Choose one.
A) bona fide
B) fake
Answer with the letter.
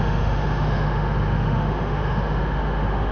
B